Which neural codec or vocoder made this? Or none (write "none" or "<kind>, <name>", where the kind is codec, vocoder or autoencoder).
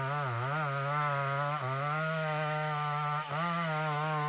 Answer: autoencoder, DAC-VAE